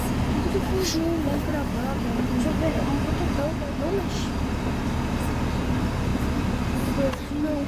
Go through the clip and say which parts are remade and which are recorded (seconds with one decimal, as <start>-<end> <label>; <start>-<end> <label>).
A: 0.0-7.7 recorded